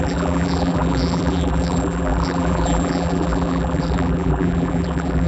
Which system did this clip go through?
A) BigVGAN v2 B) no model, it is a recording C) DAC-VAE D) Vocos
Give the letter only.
A